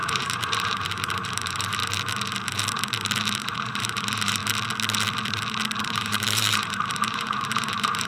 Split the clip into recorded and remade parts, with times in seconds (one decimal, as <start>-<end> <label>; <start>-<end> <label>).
0.0-1.8 remade; 1.8-3.4 recorded; 3.4-4.4 remade; 4.4-5.8 recorded; 5.8-8.1 remade